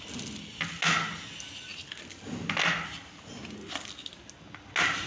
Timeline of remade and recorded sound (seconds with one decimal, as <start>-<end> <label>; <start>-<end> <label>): 0.0-5.1 recorded